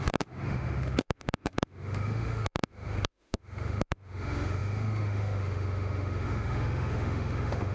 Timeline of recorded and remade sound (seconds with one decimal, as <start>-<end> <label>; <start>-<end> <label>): 0.0-7.7 remade